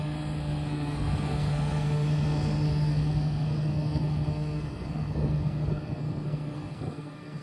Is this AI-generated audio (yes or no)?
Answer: yes